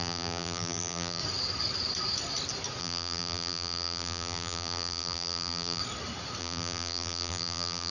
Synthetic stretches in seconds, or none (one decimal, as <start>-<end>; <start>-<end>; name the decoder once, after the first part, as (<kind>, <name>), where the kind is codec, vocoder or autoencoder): 0.0-1.2 (vocoder, BigVGAN v2); 2.8-5.8; 6.4-7.9